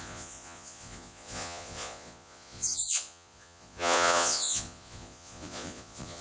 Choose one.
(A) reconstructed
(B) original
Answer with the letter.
A